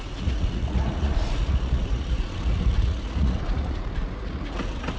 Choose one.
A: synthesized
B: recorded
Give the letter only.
A